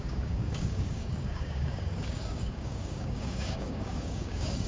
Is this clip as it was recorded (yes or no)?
no